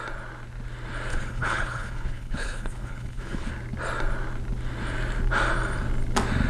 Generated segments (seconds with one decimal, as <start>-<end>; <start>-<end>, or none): 1.1-3.5